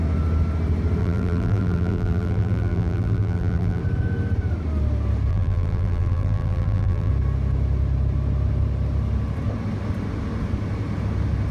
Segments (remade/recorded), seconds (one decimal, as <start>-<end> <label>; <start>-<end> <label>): 0.0-1.0 recorded; 1.0-3.8 remade; 3.8-5.3 recorded; 5.3-7.1 remade; 7.1-11.5 recorded